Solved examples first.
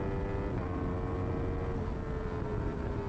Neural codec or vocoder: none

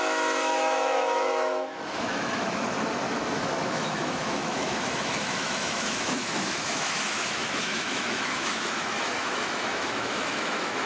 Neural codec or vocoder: autoencoder, DAC-VAE